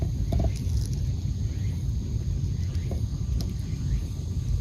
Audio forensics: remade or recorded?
recorded